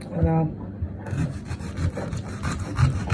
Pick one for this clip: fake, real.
real